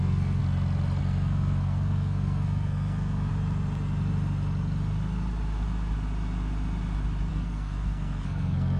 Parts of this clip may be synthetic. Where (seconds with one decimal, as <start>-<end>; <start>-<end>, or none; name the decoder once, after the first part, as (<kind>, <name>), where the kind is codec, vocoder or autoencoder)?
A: 0.0-0.4 (codec, SNAC); 1.0-3.3; 7.3-8.8